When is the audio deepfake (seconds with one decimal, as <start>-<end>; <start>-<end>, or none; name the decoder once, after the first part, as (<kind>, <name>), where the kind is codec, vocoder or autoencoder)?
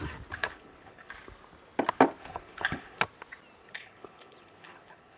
0.4-1.1 (codec, HILCodec); 2.2-3.0; 3.6-5.2